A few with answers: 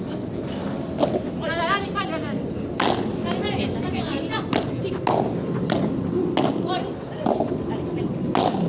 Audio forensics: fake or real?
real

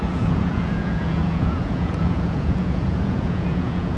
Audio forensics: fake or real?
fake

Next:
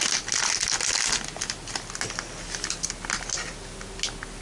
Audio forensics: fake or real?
real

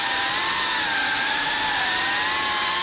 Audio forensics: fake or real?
real